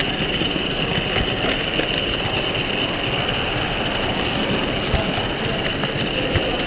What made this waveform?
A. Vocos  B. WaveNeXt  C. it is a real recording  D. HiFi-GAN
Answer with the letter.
C